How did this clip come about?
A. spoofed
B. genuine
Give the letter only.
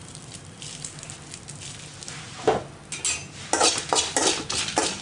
B